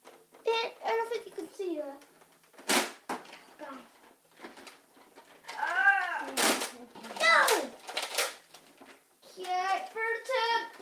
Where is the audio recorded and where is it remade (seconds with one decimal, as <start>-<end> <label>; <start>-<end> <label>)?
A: 0.0-10.8 recorded